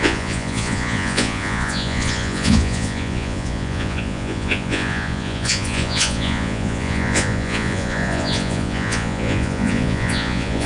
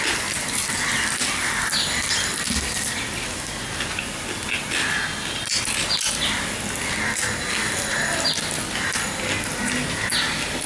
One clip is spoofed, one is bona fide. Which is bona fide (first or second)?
second